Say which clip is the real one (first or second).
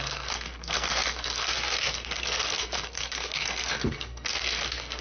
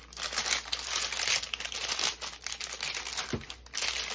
second